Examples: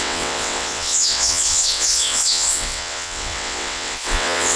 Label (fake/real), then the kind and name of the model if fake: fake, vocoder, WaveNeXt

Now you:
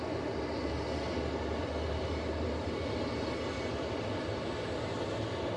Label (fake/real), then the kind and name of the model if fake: real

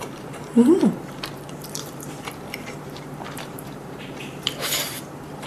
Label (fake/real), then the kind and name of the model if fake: fake, vocoder, BigVGAN v2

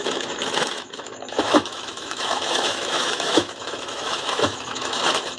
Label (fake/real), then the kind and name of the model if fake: fake, autoencoder, DAC-VAE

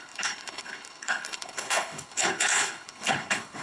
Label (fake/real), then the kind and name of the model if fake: fake, codec, HILCodec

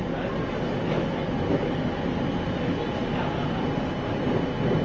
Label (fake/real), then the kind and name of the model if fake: real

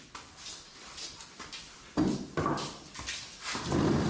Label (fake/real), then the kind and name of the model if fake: real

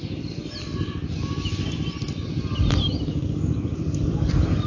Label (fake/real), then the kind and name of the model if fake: real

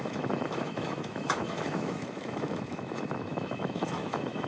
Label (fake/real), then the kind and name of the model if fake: fake, autoencoder, DAC-VAE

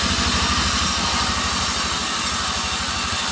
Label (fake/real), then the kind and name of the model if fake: real